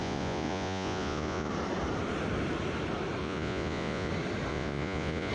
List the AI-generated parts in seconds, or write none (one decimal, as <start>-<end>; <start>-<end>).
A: 0.0-1.5; 3.2-4.1; 4.5-5.3